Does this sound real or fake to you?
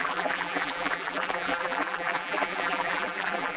fake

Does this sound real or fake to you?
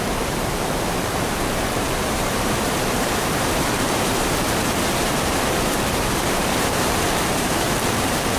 fake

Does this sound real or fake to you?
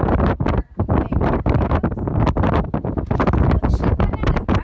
fake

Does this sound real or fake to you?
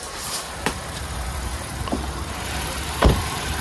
fake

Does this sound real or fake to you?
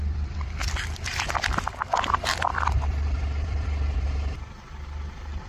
fake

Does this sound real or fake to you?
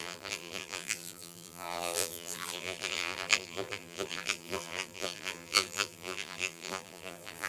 fake